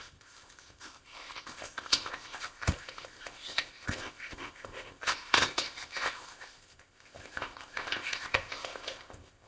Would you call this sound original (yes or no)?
no